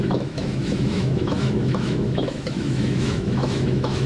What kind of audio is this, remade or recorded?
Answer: remade